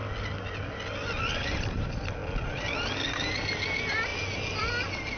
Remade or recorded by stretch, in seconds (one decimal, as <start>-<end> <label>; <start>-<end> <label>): 0.0-5.2 recorded